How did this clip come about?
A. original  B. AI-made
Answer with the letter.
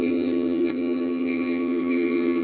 B